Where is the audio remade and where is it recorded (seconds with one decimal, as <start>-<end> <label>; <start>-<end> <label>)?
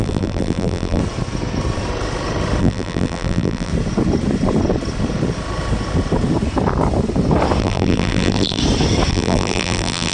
0.0-1.0 remade; 1.0-2.6 recorded; 2.6-3.7 remade; 3.7-7.6 recorded; 7.6-8.6 remade; 8.6-9.1 recorded; 9.1-10.1 remade